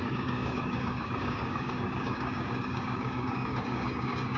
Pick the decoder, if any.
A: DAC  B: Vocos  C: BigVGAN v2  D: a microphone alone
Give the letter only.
A